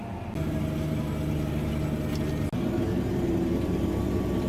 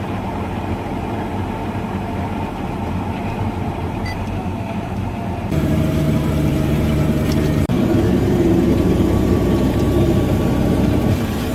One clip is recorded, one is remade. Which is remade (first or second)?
second